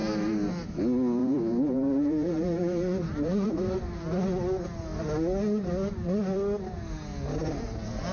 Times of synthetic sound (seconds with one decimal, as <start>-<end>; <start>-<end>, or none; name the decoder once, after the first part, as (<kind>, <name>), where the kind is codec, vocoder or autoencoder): 1.2-4.2 (vocoder, BigVGAN v2)

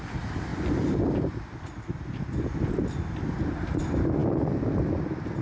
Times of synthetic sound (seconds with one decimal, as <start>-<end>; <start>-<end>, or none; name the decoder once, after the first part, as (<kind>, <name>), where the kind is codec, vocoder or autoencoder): 0.5-1.2 (vocoder, BigVGAN v2)

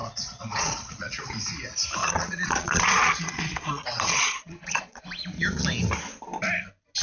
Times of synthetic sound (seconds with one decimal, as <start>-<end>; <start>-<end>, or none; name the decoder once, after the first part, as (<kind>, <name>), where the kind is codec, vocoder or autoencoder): 0.0-1.3 (vocoder, Vocos); 2.0-5.0

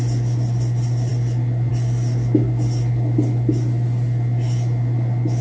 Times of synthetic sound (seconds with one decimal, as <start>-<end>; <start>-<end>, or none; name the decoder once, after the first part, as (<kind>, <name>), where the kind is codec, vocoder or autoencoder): none

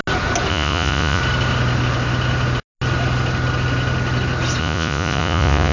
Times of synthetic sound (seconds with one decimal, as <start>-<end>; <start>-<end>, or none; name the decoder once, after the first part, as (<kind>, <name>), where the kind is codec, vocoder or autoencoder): 0.5-1.2 (vocoder, Vocos); 4.6-5.7

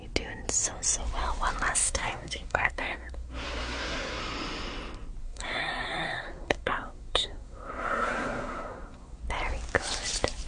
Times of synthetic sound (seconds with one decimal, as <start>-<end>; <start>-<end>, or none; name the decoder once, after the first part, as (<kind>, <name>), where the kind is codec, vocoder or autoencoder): 1.8-4.2 (codec, SNAC); 5.2-9.2

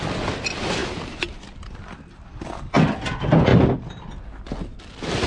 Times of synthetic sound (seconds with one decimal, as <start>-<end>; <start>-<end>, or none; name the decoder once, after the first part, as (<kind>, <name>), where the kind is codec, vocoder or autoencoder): none